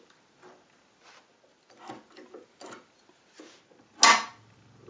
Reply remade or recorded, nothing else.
recorded